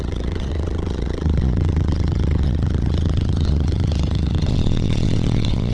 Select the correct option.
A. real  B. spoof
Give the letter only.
B